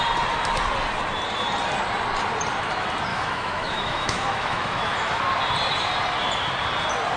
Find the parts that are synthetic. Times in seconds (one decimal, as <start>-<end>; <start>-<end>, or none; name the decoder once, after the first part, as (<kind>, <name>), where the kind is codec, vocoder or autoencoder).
3.1-5.2 (autoencoder, DAC-VAE)